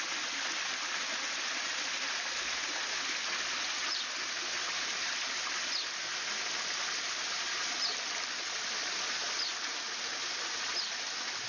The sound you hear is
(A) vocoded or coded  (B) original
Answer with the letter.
B